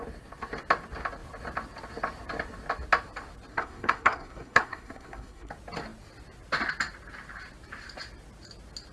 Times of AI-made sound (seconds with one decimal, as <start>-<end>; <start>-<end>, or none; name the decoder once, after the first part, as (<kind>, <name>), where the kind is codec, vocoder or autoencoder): 3.5-5.5 (codec, SNAC)